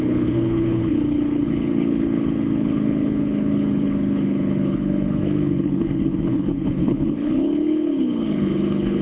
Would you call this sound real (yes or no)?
no